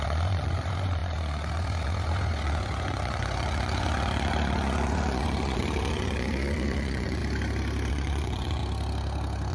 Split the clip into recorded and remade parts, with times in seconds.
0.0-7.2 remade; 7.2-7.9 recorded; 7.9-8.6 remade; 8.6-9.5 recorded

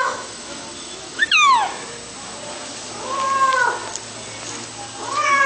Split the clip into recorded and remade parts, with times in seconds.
0.0-1.7 remade; 1.7-5.0 recorded; 5.0-5.5 remade

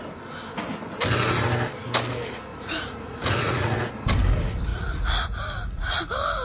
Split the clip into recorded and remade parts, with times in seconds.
0.0-2.5 recorded; 2.5-3.9 remade; 3.9-4.7 recorded; 4.7-6.0 remade; 6.0-6.4 recorded

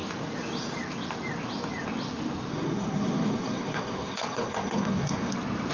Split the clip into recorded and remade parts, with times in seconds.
0.0-2.5 recorded; 2.5-5.3 remade; 5.3-5.7 recorded

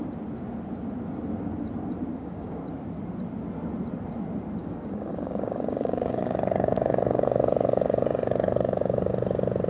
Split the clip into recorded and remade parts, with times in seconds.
0.0-2.1 recorded; 2.1-2.6 remade; 2.6-4.6 recorded; 4.6-9.1 remade; 9.1-9.7 recorded

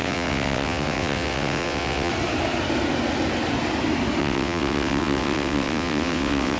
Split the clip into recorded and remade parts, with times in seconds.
0.0-2.1 remade; 2.1-4.2 recorded; 4.2-6.6 remade

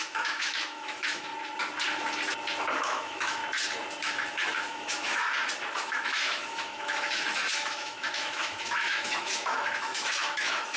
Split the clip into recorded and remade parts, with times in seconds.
0.0-1.3 remade; 1.3-2.7 recorded; 2.7-3.4 remade; 3.4-4.0 recorded; 4.0-5.2 remade; 5.2-5.7 recorded; 5.7-10.8 remade